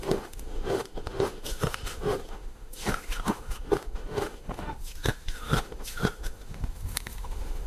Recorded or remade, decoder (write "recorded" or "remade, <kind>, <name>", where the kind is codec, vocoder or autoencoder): remade, autoencoder, DAC-VAE